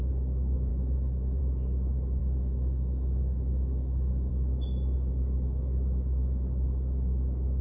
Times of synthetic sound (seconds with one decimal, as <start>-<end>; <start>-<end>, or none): 0.7-1.4; 2.2-4.3